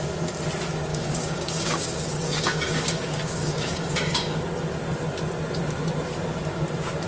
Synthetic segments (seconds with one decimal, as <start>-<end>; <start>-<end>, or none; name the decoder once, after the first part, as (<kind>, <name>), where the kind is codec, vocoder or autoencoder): 0.9-4.4 (codec, DAC)